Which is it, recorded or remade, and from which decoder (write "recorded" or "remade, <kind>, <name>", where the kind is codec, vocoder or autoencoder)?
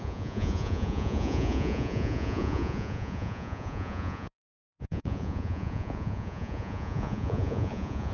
remade, vocoder, Vocos